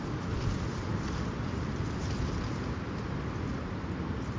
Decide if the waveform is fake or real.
real